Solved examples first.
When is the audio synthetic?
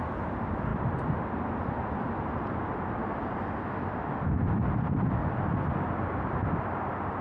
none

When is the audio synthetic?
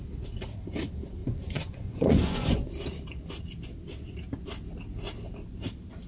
1.2-2.7 (vocoder, Vocos)